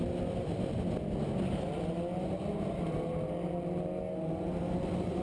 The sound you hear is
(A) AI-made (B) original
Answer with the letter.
B